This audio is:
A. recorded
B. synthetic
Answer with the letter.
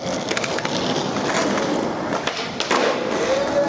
A